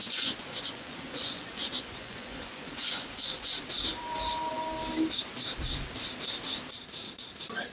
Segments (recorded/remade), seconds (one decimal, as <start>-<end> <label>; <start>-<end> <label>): 0.0-3.6 remade; 3.6-7.7 recorded